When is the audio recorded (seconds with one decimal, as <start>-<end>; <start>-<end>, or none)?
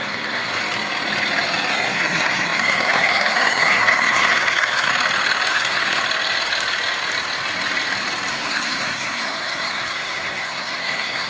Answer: 0.6-1.7; 4.9-5.5; 6.0-8.3